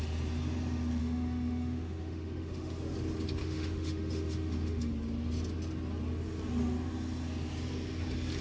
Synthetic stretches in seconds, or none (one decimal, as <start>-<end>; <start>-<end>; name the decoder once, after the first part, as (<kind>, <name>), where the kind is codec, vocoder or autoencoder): 1.0-2.7 (autoencoder, DAC-VAE); 3.4-4.9